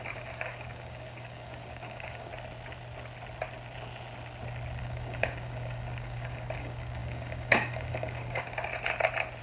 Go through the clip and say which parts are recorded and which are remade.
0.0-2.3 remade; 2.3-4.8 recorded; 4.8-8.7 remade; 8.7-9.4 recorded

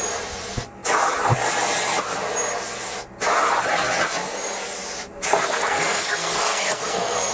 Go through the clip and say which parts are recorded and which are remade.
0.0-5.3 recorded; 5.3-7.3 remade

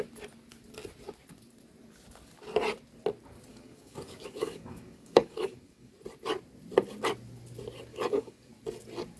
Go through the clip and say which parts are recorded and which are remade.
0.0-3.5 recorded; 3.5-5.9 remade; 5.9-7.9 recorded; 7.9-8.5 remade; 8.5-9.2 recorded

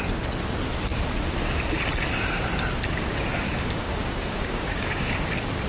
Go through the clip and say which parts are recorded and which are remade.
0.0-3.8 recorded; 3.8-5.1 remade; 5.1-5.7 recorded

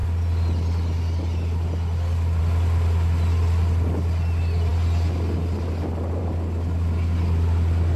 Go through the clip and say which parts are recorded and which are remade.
0.0-8.0 recorded

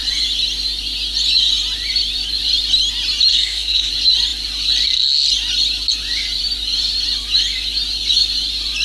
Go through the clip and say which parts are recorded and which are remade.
0.0-3.3 recorded; 3.3-3.9 remade; 3.9-8.8 recorded

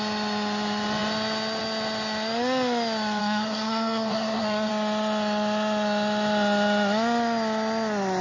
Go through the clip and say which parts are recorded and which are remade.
0.0-3.2 recorded; 3.2-4.7 remade; 4.7-8.2 recorded

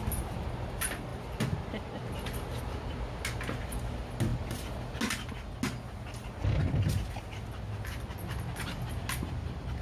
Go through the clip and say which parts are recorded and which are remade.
0.0-1.1 recorded; 1.1-2.6 remade; 2.6-9.8 recorded